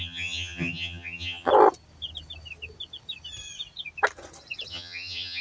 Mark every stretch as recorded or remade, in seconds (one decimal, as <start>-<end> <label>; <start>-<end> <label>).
0.0-1.5 remade; 1.5-4.7 recorded; 4.7-5.4 remade